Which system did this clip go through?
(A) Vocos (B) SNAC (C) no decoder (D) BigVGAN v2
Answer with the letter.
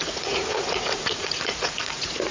A